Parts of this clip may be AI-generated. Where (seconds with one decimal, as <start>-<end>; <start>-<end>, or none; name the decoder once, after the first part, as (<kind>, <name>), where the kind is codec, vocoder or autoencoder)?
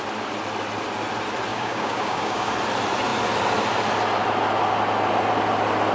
1.5-2.5 (codec, DAC)